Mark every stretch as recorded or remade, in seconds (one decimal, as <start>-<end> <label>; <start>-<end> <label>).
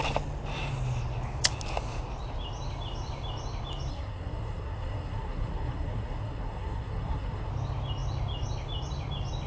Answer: 0.0-3.9 recorded; 3.9-7.5 remade; 7.5-9.5 recorded